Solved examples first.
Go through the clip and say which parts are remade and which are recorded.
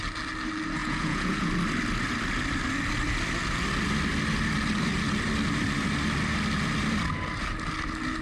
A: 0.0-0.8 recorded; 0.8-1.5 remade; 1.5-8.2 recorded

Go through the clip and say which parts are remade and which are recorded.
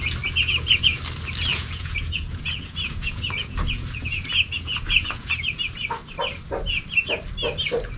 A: 0.0-0.4 recorded; 0.4-1.0 remade; 1.0-1.5 recorded; 1.5-5.3 remade; 5.3-8.0 recorded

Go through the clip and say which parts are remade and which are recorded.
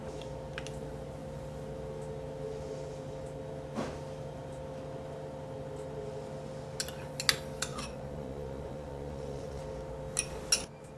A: 0.0-7.7 recorded; 7.7-9.6 remade; 9.6-11.0 recorded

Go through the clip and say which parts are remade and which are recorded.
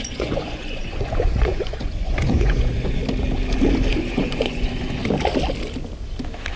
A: 0.0-3.0 remade; 3.0-3.9 recorded; 3.9-5.0 remade; 5.0-6.6 recorded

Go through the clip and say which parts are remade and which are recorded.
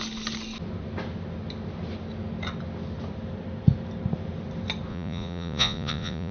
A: 0.0-4.9 recorded; 4.9-6.3 remade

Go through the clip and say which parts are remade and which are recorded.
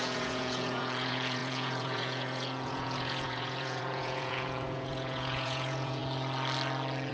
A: 0.0-6.0 remade; 6.0-7.1 recorded